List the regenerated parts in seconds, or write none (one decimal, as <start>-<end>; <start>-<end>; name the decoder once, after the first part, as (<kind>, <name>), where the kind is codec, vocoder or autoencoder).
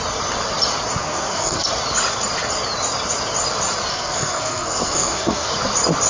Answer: 1.0-1.7 (codec, SNAC); 3.9-5.5